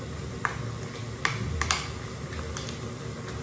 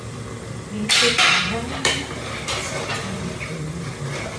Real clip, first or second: first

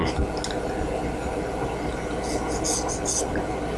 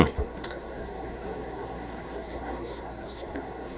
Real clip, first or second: first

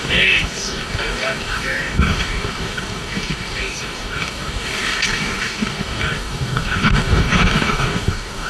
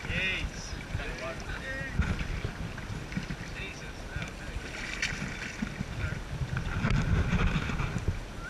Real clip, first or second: second